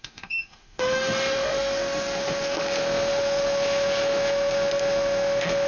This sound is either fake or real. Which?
fake